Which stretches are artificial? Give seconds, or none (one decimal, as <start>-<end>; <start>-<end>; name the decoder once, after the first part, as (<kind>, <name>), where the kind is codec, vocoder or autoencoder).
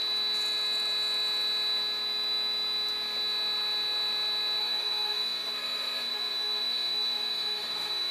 4.6-8.1 (autoencoder, DAC-VAE)